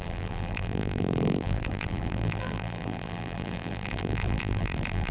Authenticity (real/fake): fake